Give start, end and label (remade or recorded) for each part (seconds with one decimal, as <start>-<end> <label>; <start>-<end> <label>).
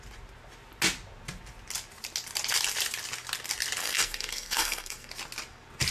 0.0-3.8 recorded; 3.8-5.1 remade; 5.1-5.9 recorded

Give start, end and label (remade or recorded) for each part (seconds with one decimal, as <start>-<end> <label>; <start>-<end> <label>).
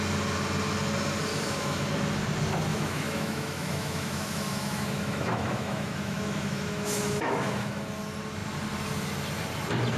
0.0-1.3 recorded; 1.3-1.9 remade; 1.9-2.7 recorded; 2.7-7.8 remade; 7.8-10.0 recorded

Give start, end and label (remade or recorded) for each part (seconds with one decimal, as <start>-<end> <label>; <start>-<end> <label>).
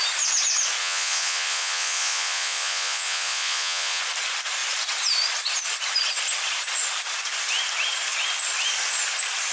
0.0-0.8 recorded; 0.8-4.0 remade; 4.0-9.5 recorded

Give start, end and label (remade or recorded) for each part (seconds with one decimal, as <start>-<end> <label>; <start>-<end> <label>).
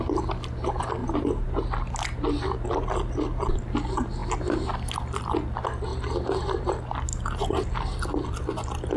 0.0-1.0 recorded; 1.0-1.6 remade; 1.6-7.1 recorded; 7.1-7.6 remade; 7.6-9.0 recorded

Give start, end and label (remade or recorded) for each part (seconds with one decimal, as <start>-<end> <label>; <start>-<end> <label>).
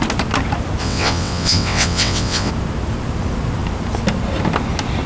0.0-0.8 recorded; 0.8-2.5 remade; 2.5-5.1 recorded